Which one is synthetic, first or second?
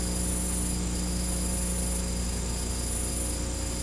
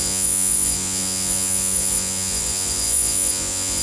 second